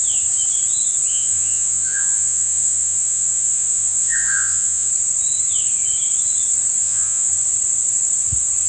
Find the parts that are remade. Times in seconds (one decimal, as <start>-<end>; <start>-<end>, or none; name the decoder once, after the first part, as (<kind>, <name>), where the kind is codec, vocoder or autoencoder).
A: 1.1-4.9 (vocoder, Vocos); 6.8-7.3